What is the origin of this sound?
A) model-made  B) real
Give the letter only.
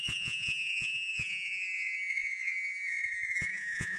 A